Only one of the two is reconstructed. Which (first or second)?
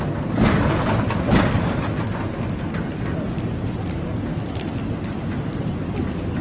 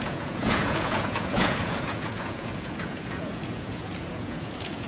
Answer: second